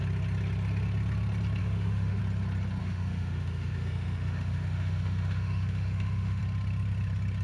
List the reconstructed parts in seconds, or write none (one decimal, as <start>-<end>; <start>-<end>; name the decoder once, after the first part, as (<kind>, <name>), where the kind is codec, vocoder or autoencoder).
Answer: 1.6-2.2 (autoencoder, DAC-VAE); 2.8-6.4